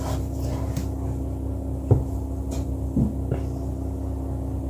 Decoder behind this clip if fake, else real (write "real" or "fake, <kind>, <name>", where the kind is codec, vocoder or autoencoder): real